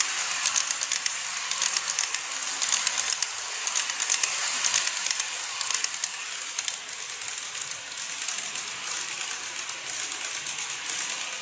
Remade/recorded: recorded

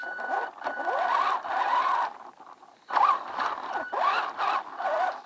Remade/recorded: recorded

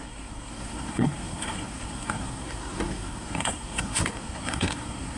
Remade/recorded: remade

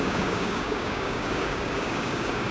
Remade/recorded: remade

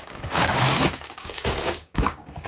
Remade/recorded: remade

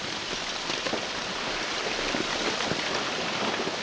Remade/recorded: recorded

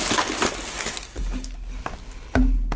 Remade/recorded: recorded